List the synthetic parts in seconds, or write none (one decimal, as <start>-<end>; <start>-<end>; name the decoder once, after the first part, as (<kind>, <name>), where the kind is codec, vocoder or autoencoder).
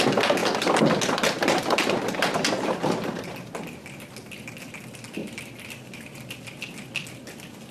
5.2-6.3 (vocoder, BigVGAN v2)